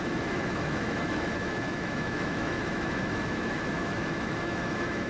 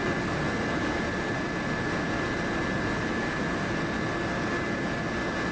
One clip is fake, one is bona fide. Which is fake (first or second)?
first